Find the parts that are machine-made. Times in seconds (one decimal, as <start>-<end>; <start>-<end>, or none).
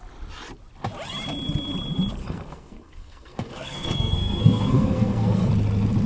2.2-5.5